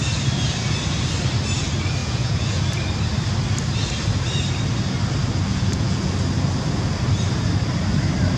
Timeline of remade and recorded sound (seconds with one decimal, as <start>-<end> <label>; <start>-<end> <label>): 0.0-2.0 recorded; 2.0-2.6 remade; 2.6-5.5 recorded; 5.5-6.1 remade; 6.1-8.4 recorded